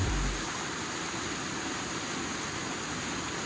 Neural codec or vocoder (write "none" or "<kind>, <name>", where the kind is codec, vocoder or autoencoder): none